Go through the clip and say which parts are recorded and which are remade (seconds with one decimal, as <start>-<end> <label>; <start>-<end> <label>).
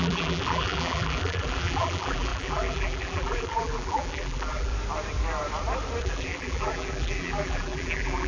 0.0-4.7 remade; 4.7-6.0 recorded; 6.0-8.3 remade